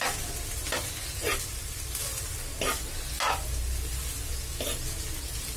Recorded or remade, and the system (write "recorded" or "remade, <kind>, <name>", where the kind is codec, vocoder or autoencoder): recorded